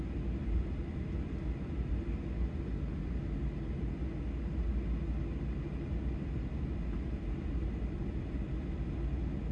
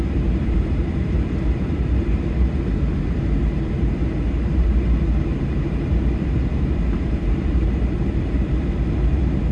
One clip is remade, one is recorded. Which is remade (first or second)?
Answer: second